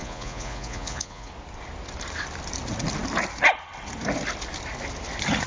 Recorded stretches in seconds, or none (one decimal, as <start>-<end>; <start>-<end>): 1.3-5.5